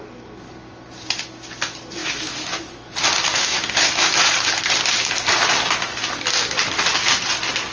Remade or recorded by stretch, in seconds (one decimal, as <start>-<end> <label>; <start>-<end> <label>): 0.0-2.0 recorded; 2.0-2.9 remade; 2.9-3.3 recorded; 3.3-4.3 remade; 4.3-7.7 recorded